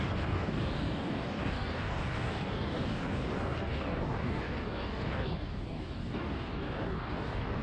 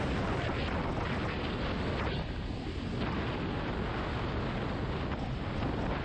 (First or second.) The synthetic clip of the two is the first